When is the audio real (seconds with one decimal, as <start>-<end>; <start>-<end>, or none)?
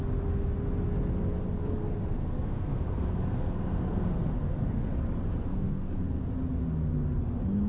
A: 0.0-1.6; 4.9-5.5; 6.2-7.7